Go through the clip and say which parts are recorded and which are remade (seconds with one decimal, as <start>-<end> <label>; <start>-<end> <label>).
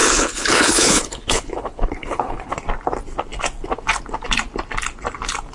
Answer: 0.0-2.5 remade; 2.5-5.5 recorded